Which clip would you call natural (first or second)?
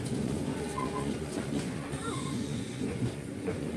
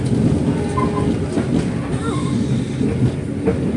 second